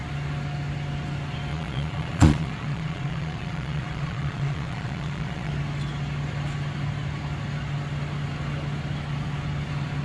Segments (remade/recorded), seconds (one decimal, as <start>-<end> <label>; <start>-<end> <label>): 0.0-1.5 recorded; 1.5-5.5 remade; 5.5-10.0 recorded